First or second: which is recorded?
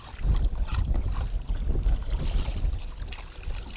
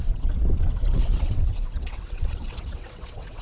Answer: first